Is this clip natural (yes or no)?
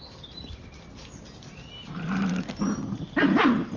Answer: yes